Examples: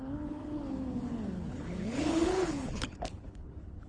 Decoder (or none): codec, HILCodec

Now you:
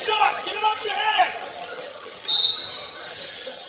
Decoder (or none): vocoder, HiFi-GAN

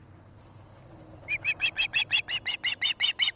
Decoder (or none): none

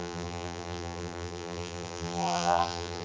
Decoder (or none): vocoder, BigVGAN v2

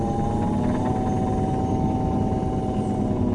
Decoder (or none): none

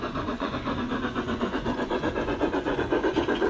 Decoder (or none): vocoder, Vocos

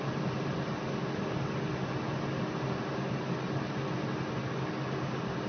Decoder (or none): none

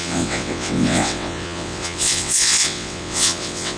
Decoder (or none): vocoder, WaveNeXt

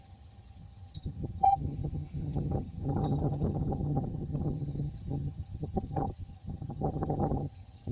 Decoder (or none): vocoder, HiFi-GAN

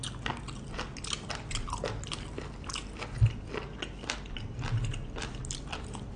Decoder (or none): none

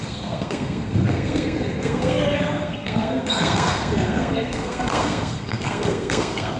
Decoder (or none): codec, SNAC